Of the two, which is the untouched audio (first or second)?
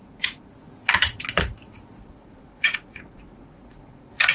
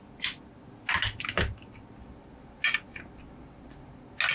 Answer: second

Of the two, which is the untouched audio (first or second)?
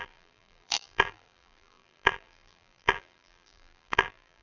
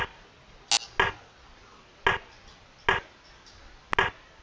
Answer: second